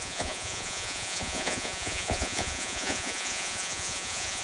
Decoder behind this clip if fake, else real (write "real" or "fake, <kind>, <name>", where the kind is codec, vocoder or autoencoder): fake, vocoder, Vocos